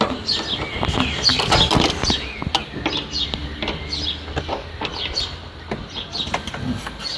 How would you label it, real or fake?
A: real